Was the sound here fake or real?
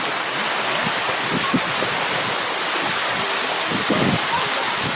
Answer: real